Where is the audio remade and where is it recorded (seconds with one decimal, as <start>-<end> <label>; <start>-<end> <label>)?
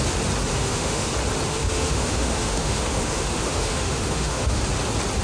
0.0-0.5 recorded; 0.5-1.1 remade; 1.1-1.5 recorded; 1.5-4.6 remade; 4.6-5.2 recorded